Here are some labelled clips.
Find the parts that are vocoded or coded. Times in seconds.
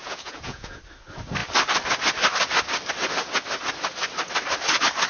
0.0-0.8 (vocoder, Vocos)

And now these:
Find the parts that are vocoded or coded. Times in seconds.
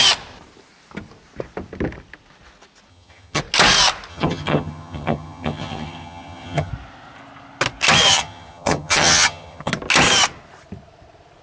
2.9-3.4 (vocoder, HiFi-GAN); 4.1-6.7; 8.1-9.7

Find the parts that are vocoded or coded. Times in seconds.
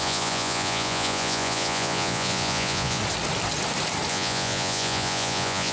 0.0-3.0 (vocoder, Vocos); 4.1-5.7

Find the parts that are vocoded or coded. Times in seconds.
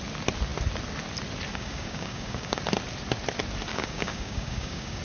1.5-2.6 (codec, DAC); 3.7-5.0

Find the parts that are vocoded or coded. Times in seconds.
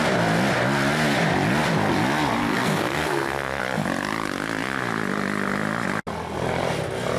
2.4-3.6 (codec, SNAC)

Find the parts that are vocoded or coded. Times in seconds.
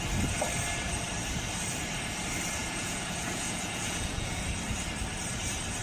2.6-4.4 (vocoder, Vocos)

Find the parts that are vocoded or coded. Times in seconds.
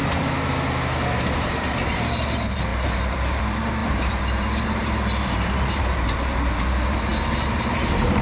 1.4-8.2 (vocoder, BigVGAN v2)